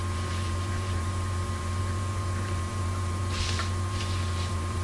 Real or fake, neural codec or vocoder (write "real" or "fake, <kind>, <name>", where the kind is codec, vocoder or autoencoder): fake, vocoder, BigVGAN v2